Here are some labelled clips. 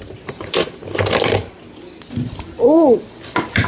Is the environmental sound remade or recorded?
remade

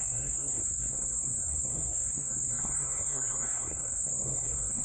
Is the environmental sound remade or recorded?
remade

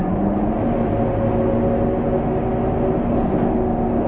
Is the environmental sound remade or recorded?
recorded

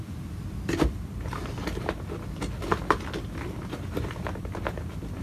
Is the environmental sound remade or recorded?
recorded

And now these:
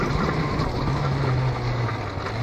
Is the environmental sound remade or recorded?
recorded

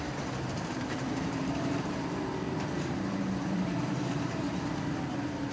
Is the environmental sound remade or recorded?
remade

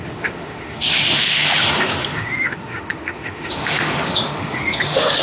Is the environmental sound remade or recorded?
remade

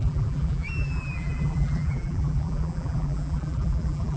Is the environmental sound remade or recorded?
remade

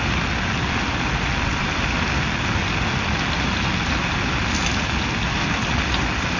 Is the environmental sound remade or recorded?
recorded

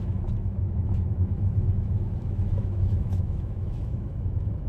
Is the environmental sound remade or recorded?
remade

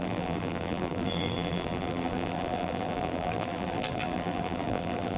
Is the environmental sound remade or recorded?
remade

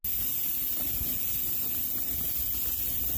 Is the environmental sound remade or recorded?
recorded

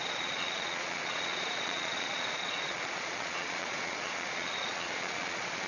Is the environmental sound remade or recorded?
remade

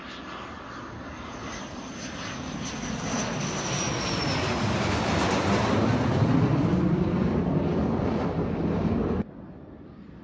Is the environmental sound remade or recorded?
recorded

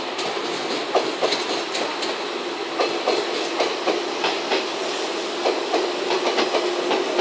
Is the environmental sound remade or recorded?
recorded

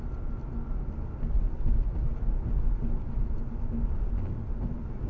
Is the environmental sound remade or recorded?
recorded